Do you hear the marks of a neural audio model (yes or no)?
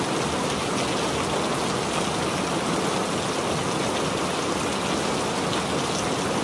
no